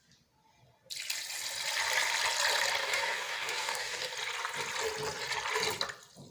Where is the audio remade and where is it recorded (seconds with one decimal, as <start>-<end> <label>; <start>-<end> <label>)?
0.0-2.8 recorded; 2.8-4.1 remade; 4.1-6.3 recorded

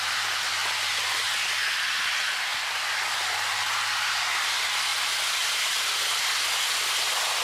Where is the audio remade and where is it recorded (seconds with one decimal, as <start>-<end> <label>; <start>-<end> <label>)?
0.0-2.5 recorded; 2.5-3.7 remade; 3.7-7.4 recorded

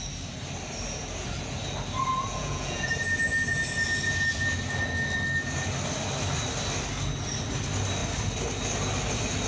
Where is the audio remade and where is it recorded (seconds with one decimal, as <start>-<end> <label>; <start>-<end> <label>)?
0.0-2.4 recorded; 2.4-2.9 remade; 2.9-9.5 recorded